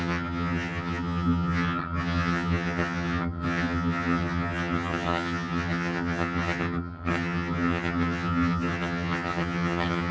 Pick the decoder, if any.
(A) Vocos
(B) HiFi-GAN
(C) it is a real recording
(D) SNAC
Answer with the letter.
B